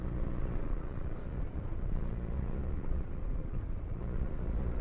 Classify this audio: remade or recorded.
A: remade